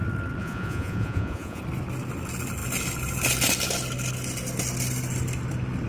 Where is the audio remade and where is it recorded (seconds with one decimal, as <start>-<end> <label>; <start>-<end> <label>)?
0.0-0.4 recorded; 0.4-1.6 remade; 1.6-5.9 recorded